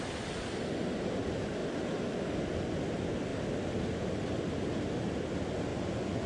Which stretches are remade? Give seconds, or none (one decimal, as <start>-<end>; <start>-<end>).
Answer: 5.7-6.3